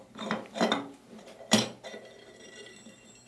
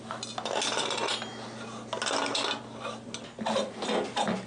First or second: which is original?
second